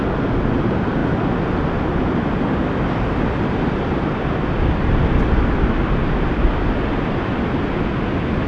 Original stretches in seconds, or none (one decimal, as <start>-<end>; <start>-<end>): 0.0-8.5